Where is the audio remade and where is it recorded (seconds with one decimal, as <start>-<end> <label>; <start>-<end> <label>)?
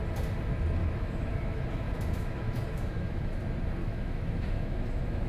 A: 0.0-0.8 recorded; 0.8-3.3 remade; 3.3-3.8 recorded; 3.8-5.3 remade